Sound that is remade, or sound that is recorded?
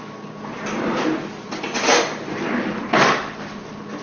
recorded